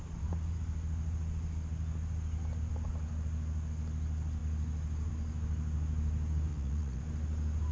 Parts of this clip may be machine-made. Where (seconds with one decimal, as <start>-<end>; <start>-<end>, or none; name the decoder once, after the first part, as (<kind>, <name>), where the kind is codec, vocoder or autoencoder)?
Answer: 6.5-7.0 (vocoder, Vocos)